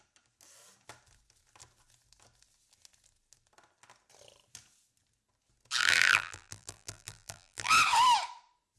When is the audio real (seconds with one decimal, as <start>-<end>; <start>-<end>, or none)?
0.0-5.8; 7.7-8.8